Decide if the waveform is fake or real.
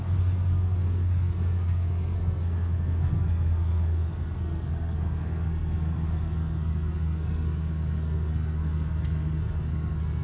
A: fake